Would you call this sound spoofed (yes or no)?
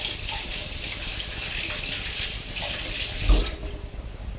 no